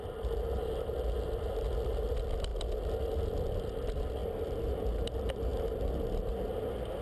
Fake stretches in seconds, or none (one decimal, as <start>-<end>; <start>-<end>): none

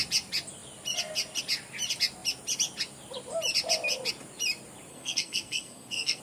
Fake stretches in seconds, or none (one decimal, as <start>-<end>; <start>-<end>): 4.9-6.2

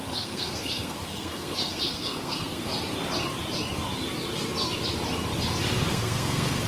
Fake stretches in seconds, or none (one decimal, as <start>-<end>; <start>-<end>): 0.0-2.7; 5.9-6.7

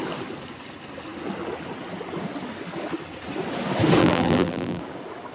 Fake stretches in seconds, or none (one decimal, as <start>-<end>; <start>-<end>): 4.0-4.8

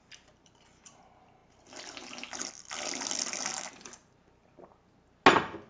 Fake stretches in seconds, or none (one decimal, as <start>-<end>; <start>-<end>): none

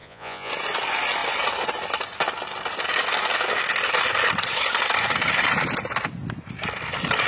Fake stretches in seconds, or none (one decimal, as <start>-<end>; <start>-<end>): 0.0-0.5

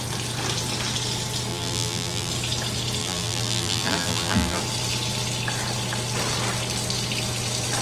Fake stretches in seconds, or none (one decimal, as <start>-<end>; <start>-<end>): 1.5-2.3; 3.0-4.6

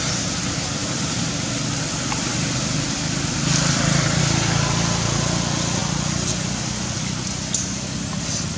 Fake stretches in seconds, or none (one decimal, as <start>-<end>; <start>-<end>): 0.8-4.2; 5.8-6.3